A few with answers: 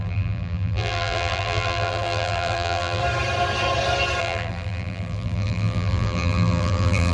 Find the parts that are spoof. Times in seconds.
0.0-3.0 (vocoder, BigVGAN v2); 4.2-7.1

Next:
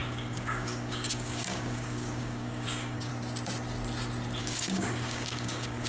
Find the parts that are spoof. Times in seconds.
0.0-3.1 (codec, DAC); 4.4-5.9